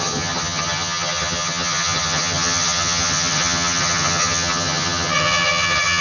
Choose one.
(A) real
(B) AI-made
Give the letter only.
B